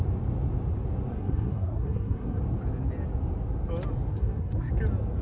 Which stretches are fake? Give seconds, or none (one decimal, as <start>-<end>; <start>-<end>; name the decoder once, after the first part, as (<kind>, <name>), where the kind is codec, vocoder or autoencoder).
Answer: 1.1-2.4 (codec, SNAC); 4.1-4.7